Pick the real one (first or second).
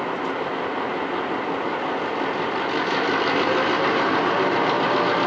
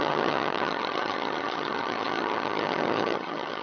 first